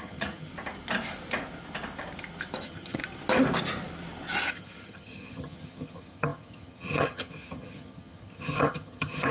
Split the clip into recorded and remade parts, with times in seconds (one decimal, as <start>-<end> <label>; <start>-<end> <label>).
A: 0.0-0.5 remade; 0.5-2.6 recorded; 2.6-3.0 remade; 3.0-4.5 recorded; 4.5-9.3 remade